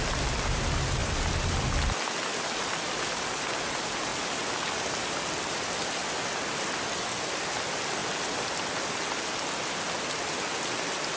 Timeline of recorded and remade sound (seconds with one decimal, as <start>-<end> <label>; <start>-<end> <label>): 0.0-11.2 recorded